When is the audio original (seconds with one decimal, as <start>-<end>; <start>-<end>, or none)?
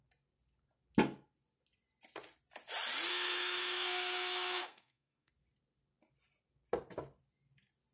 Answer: 0.0-3.1; 5.3-7.9